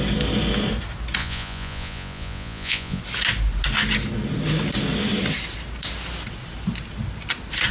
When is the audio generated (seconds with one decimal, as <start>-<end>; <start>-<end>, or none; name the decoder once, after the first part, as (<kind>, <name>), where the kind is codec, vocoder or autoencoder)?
1.2-3.0 (vocoder, Vocos)